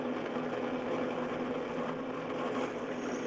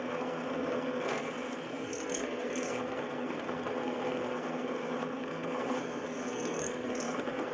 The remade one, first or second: second